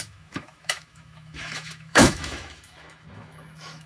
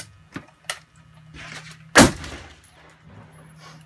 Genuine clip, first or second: second